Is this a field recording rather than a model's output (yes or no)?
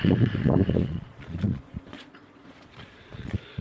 no